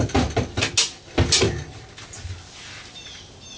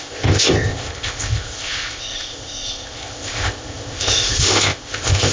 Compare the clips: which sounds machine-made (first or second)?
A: second